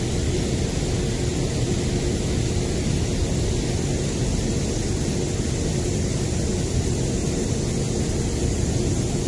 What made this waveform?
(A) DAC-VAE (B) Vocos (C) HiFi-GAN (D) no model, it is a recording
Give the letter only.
D